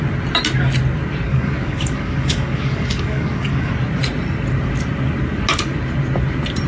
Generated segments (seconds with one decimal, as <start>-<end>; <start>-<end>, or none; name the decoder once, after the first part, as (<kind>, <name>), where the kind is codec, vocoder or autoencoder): 1.3-3.7 (codec, DAC)